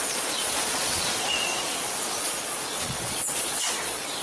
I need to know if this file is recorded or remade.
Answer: remade